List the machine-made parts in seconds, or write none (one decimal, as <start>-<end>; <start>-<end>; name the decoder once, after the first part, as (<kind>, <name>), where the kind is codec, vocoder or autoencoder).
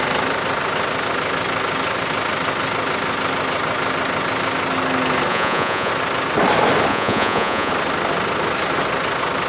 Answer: 5.3-5.9 (vocoder, Vocos); 6.9-7.7